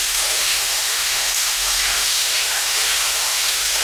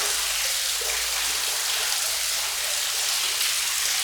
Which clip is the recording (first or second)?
second